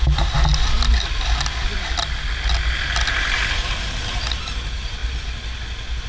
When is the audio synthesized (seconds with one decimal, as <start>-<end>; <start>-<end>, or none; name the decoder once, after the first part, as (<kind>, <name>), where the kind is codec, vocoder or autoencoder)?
none